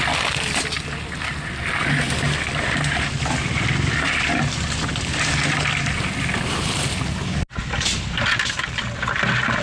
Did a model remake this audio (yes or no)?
no